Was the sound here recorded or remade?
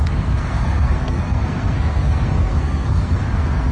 remade